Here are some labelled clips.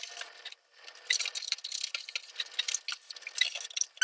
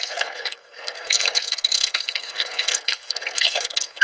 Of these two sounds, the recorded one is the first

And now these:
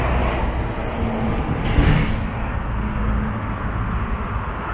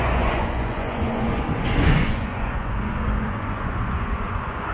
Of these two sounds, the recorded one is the first